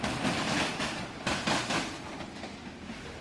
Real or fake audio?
real